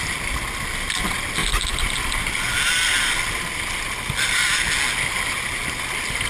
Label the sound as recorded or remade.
recorded